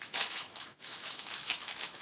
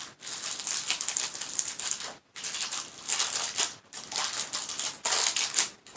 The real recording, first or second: second